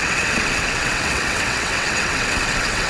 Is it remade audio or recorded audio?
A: remade